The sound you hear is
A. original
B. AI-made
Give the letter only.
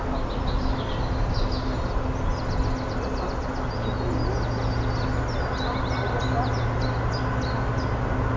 A